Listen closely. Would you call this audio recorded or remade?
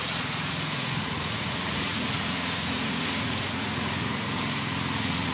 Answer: remade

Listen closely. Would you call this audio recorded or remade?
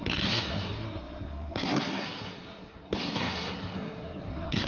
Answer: remade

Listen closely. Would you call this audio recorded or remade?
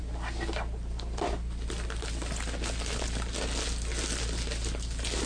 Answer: recorded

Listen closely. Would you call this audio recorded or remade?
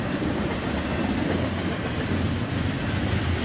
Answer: recorded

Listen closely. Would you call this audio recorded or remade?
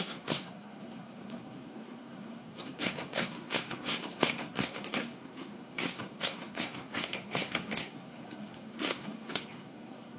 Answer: remade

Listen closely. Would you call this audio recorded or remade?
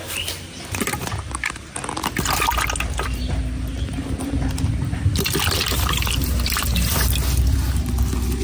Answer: recorded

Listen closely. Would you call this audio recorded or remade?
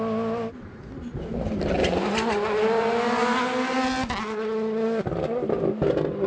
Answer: recorded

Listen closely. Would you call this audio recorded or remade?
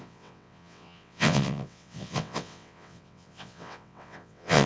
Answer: remade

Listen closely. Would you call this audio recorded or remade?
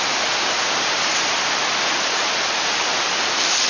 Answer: recorded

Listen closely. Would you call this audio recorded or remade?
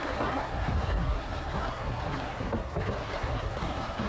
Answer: remade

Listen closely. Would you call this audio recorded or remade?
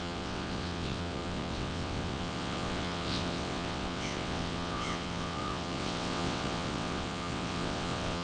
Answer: remade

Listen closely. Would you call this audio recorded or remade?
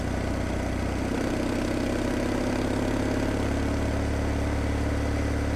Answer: recorded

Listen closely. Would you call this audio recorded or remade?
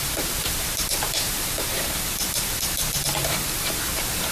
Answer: remade